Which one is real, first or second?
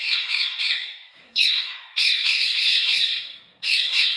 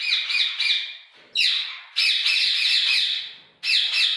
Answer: second